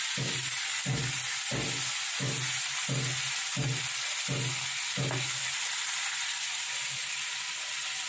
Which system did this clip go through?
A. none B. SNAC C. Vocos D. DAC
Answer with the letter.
A